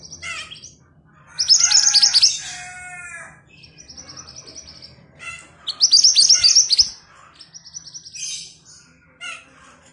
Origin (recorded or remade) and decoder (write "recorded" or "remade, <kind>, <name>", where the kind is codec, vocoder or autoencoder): recorded